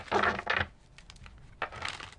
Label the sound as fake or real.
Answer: real